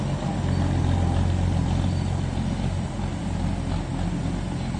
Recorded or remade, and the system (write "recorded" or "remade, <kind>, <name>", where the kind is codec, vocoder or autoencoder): recorded